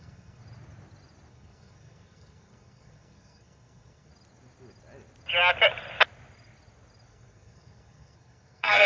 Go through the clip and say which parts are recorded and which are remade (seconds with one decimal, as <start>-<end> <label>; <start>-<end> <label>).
0.0-0.4 remade; 0.4-1.3 recorded; 1.3-4.1 remade; 4.1-7.1 recorded; 7.1-8.9 remade